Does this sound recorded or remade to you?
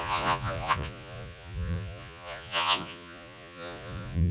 remade